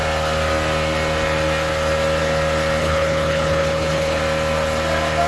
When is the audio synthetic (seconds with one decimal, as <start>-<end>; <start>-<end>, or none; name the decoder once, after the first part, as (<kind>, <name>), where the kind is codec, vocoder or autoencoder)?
2.8-4.2 (codec, HILCodec)